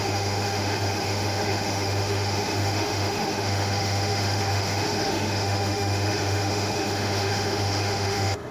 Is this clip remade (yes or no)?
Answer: yes